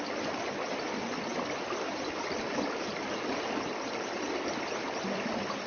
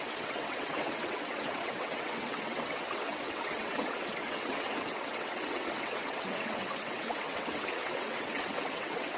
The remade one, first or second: second